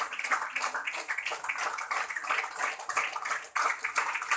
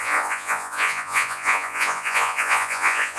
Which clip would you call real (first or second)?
first